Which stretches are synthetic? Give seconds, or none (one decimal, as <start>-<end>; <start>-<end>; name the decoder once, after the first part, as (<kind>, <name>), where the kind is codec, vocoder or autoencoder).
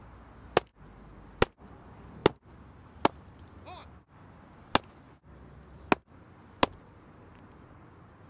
none